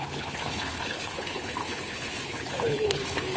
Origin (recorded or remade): remade